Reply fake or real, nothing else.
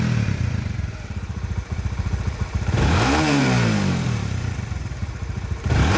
fake